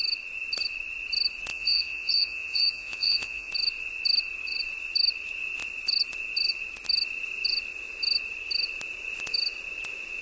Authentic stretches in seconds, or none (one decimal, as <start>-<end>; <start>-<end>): 0.0-1.5; 3.5-10.2